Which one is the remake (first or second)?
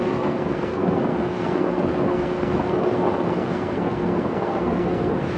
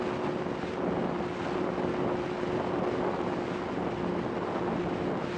first